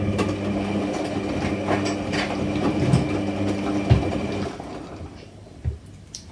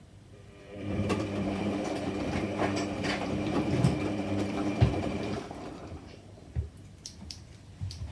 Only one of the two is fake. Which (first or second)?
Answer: second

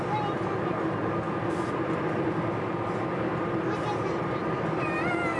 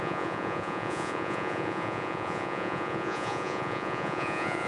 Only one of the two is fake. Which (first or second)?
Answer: second